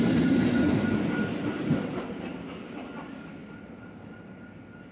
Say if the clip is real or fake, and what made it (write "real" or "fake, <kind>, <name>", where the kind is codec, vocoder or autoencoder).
real